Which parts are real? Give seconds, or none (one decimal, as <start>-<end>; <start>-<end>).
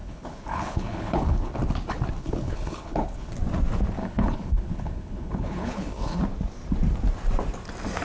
1.5-2.2; 3.3-4.0; 6.2-8.0